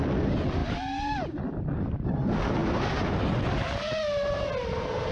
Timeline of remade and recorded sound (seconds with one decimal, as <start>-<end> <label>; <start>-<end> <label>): 0.0-5.1 recorded